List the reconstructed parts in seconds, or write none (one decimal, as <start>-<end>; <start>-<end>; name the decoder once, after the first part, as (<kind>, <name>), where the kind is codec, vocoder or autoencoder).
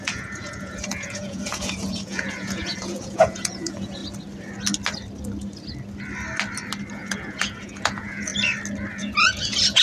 0.0-4.0 (vocoder, Vocos); 6.9-8.3; 8.9-9.8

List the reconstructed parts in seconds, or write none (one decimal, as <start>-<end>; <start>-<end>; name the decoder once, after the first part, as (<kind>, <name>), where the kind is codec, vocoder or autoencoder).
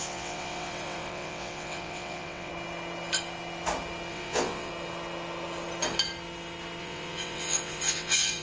0.0-2.5 (vocoder, WaveNeXt); 4.1-4.7; 6.8-8.4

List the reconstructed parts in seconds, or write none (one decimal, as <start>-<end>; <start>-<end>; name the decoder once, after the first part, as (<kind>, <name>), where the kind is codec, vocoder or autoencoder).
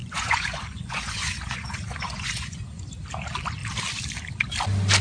0.0-2.6 (vocoder, Vocos)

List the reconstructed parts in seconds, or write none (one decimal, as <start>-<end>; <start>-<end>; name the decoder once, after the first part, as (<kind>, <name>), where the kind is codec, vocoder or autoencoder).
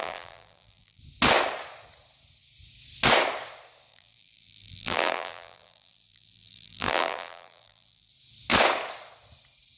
0.0-1.0 (vocoder, BigVGAN v2); 3.9-8.1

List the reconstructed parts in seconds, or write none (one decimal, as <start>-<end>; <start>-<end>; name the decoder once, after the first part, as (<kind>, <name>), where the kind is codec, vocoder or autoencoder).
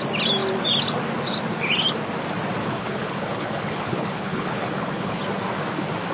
2.6-5.2 (codec, HILCodec)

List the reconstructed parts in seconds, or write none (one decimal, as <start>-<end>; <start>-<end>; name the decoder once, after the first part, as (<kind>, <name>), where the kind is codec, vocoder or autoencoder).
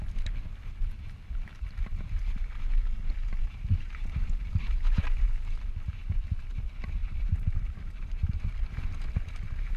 3.4-5.5 (vocoder, BigVGAN v2); 7.0-8.3